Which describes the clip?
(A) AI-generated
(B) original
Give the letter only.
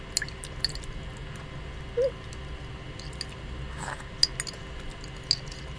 B